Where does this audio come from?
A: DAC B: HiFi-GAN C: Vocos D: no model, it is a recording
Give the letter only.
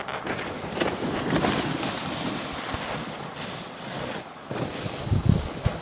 D